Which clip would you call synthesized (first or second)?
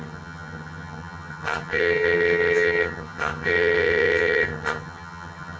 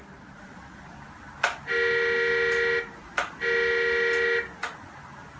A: first